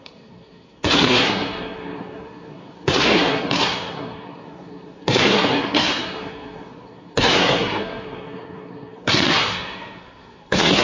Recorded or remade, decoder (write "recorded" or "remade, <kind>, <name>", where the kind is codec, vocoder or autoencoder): remade, codec, SNAC